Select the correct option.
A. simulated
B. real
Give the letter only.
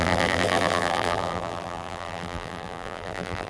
A